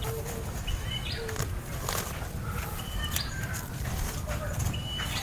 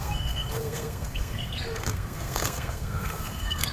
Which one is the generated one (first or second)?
second